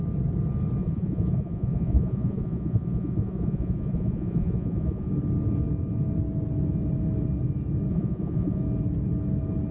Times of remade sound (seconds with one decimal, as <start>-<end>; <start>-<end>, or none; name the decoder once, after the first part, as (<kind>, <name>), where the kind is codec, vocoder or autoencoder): 0.8-5.1 (vocoder, Vocos); 7.9-8.6